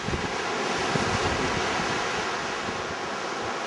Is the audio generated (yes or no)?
no